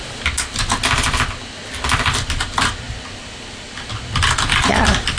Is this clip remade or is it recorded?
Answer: recorded